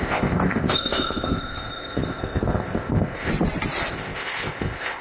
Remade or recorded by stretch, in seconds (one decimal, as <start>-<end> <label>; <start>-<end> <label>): 0.0-3.3 remade; 3.3-3.9 recorded; 3.9-5.0 remade